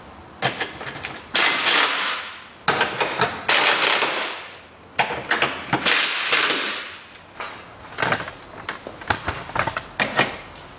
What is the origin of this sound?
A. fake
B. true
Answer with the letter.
B